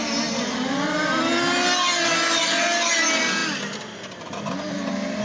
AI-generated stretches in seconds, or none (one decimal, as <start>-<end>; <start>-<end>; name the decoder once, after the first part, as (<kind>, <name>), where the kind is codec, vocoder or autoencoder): none